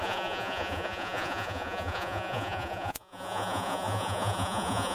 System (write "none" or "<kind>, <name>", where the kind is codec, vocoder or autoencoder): vocoder, Vocos